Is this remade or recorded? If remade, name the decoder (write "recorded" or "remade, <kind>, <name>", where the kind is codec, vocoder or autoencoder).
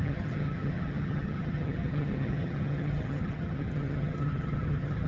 remade, vocoder, HiFi-GAN